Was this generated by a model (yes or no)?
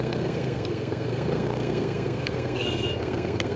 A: yes